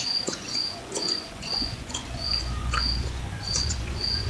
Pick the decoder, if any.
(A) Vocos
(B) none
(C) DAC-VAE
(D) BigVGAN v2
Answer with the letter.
A